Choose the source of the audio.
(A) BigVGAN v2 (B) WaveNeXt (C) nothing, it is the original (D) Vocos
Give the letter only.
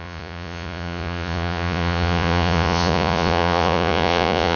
D